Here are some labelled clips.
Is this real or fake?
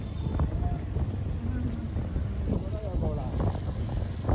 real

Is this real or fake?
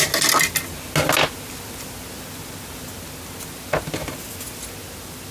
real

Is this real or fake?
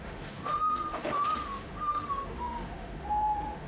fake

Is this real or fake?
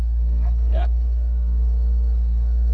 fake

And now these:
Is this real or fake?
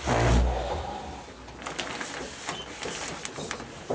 real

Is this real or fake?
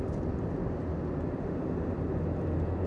real